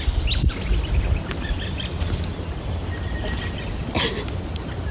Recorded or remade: recorded